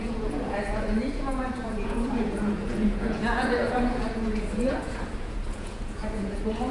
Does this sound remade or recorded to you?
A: remade